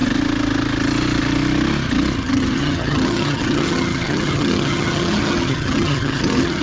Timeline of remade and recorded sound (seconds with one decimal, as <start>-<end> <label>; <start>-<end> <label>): 0.0-2.2 recorded; 2.2-6.6 remade